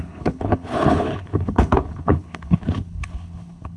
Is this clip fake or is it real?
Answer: fake